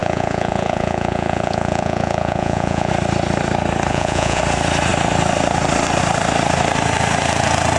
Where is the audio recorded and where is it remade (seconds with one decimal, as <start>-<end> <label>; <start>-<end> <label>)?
0.0-2.9 remade; 2.9-3.9 recorded; 3.9-4.4 remade; 4.4-7.8 recorded